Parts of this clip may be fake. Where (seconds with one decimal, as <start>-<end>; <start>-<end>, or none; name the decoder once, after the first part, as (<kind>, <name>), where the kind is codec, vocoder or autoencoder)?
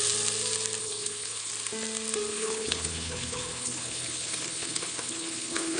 0.8-1.5 (codec, HILCodec); 2.3-5.8